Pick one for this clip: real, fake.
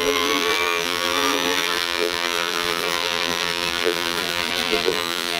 fake